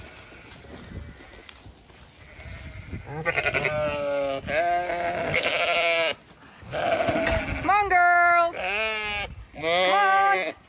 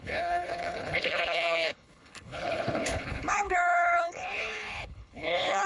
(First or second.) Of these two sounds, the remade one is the second